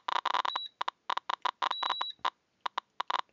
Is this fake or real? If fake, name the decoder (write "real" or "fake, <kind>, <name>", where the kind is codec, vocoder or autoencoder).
real